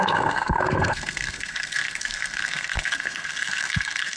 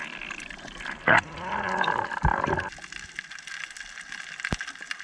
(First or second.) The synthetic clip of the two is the first